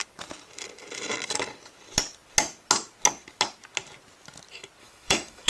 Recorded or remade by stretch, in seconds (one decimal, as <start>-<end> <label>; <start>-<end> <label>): 0.0-4.8 recorded; 4.8-5.5 remade